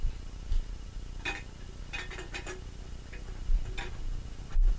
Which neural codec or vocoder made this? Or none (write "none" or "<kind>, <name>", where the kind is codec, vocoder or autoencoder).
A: none